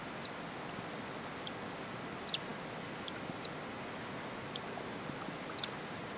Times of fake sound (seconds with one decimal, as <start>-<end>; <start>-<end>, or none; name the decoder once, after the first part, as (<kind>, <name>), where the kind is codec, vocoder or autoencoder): none